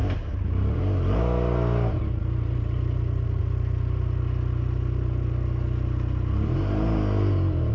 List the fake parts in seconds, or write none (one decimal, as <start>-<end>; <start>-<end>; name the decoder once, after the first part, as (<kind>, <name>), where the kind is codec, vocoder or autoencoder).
none

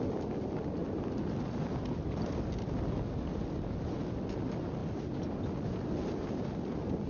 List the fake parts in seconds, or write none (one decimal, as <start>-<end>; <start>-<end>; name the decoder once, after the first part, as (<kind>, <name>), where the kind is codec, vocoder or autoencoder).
none